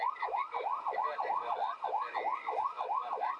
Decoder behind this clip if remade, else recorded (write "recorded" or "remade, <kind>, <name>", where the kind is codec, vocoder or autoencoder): recorded